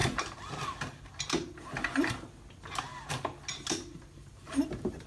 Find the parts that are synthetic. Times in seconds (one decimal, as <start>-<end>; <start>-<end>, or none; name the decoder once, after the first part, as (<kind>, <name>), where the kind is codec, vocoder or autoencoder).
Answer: none